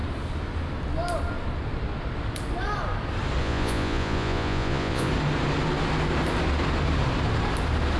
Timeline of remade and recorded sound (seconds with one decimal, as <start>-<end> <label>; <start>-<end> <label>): 0.0-3.4 recorded; 3.4-5.1 remade; 5.1-8.0 recorded